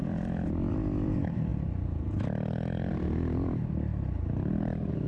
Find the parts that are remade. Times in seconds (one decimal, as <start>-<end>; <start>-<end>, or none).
0.0-1.5; 2.9-3.9